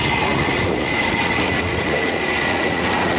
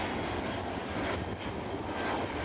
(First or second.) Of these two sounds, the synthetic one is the first